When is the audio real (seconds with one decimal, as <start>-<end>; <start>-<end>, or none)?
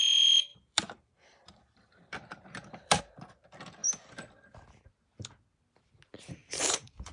0.0-0.5; 3.0-6.4